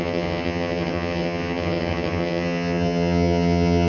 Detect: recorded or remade remade